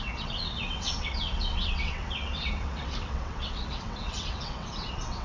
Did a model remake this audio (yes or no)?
yes